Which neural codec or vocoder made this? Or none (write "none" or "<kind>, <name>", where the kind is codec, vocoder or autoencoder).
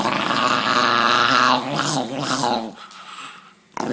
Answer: none